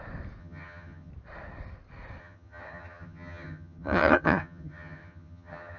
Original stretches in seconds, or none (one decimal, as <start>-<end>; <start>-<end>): 0.0-0.4; 1.1-2.2